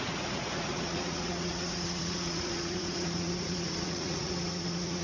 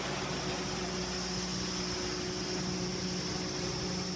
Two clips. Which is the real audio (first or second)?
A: second